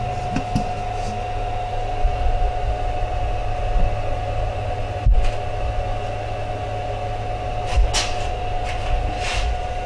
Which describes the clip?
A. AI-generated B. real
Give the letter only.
B